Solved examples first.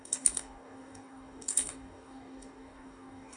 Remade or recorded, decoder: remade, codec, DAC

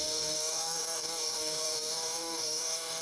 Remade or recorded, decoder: remade, codec, DAC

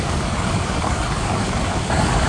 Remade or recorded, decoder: remade, codec, DAC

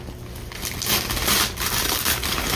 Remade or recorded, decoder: recorded